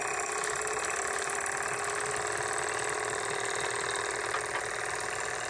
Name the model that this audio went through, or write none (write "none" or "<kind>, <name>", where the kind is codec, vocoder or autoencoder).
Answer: none